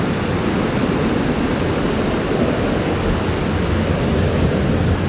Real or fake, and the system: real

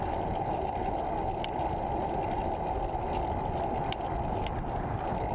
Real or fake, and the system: real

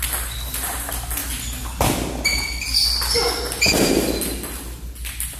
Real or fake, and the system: real